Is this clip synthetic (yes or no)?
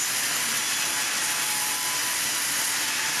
no